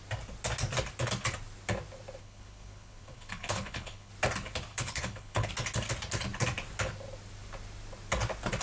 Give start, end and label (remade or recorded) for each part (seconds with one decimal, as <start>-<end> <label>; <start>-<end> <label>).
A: 0.0-2.2 recorded; 2.2-4.1 remade; 4.1-4.7 recorded; 4.7-5.5 remade; 5.5-8.6 recorded